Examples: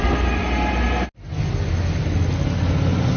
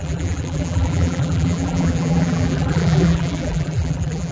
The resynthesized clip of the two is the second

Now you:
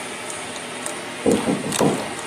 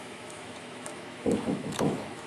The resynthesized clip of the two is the second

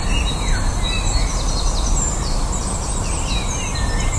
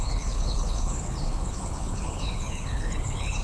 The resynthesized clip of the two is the second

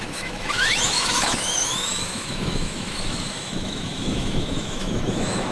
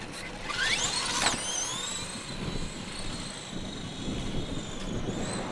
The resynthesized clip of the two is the first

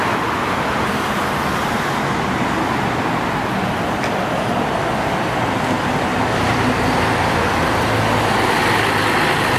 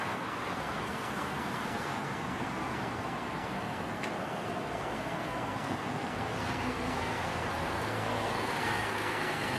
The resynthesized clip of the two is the second